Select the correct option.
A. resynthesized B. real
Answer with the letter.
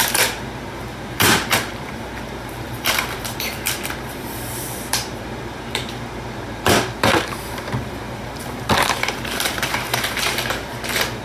A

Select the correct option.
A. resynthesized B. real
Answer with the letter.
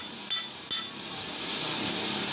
B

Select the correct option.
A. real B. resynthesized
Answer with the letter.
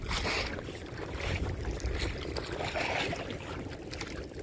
B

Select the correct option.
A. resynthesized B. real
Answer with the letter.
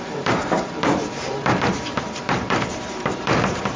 A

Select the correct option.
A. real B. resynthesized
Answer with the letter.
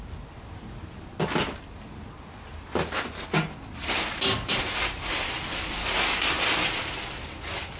A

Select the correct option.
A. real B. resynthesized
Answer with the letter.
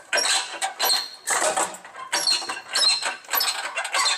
A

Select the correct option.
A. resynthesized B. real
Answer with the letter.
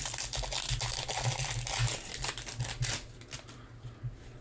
B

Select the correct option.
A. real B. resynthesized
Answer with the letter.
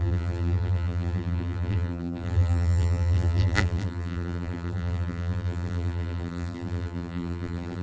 B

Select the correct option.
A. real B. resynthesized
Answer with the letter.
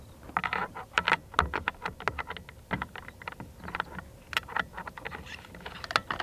A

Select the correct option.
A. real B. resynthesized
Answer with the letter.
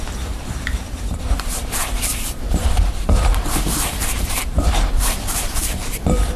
B